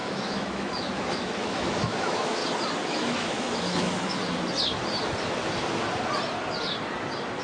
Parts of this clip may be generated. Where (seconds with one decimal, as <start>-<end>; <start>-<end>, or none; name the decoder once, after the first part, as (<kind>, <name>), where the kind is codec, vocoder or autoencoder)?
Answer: 0.0-2.4 (autoencoder, DAC-VAE); 2.9-4.2